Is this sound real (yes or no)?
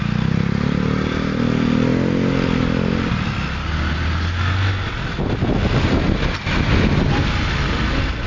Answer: yes